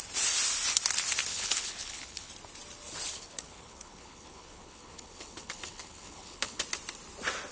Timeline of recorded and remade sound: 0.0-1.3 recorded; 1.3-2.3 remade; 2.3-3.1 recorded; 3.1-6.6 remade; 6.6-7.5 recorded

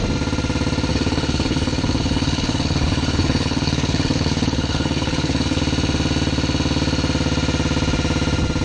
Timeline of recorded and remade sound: 0.0-0.9 recorded; 0.9-5.6 remade; 5.6-8.6 recorded

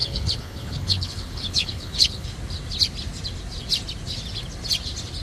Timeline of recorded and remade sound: 0.0-2.3 remade; 2.3-5.2 recorded